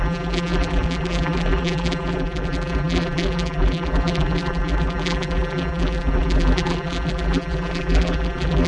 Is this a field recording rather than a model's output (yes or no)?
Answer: no